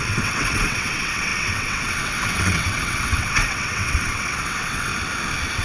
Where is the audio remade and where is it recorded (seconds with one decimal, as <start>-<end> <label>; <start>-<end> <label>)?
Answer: 0.0-4.9 remade; 4.9-5.6 recorded